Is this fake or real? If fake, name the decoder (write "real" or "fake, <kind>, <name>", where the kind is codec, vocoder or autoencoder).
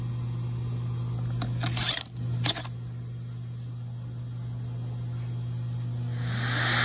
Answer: real